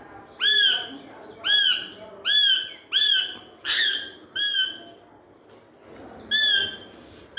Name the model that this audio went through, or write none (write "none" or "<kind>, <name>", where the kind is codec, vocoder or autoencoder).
none